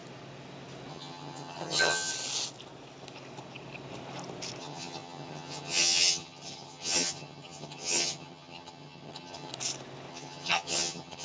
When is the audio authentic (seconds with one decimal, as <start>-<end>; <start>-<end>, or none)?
0.0-0.9; 2.1-4.6; 9.5-10.1